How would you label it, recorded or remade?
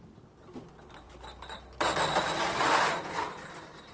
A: remade